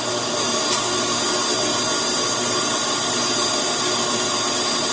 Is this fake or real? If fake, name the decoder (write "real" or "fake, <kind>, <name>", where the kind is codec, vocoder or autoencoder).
real